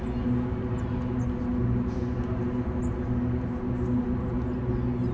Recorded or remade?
recorded